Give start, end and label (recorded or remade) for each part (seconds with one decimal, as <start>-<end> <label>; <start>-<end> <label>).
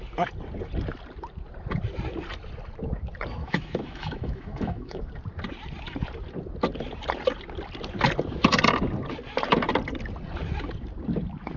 0.0-3.4 recorded; 3.4-5.0 remade; 5.0-11.6 recorded